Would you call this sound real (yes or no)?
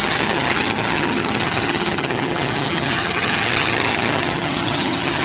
no